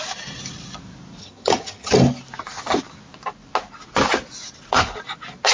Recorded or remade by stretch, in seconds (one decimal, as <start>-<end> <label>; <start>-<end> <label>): 0.0-1.2 recorded; 1.2-1.9 remade; 1.9-5.5 recorded

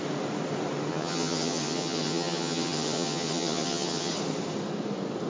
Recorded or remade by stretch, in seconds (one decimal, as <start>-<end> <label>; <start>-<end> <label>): 0.0-0.9 recorded; 0.9-4.1 remade; 4.1-5.3 recorded

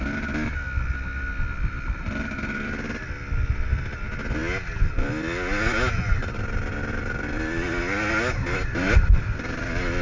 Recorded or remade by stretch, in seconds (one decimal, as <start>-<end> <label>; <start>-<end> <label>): 0.0-10.0 recorded